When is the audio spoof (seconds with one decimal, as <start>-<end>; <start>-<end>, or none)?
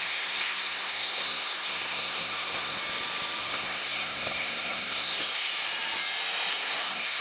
0.0-2.8; 3.4-5.5; 6.5-7.2